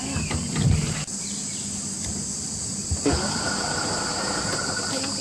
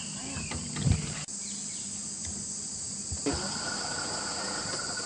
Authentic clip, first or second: second